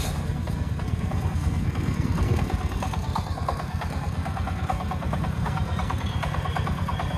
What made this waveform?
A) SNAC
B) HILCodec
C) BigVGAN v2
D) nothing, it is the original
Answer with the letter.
A